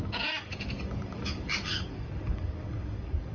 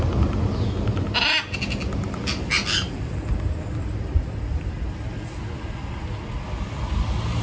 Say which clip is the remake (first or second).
first